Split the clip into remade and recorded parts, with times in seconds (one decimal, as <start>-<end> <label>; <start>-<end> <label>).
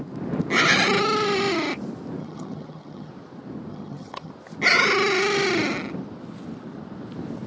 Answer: 0.0-2.2 recorded; 2.2-3.1 remade; 3.1-3.7 recorded; 3.7-4.3 remade; 4.3-7.5 recorded